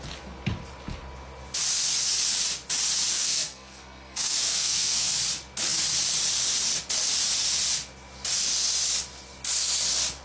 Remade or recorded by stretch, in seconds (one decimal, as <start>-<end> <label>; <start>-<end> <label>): 0.0-3.1 recorded; 3.1-5.1 remade; 5.1-10.2 recorded